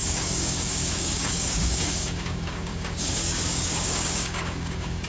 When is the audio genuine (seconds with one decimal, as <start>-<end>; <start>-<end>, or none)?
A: none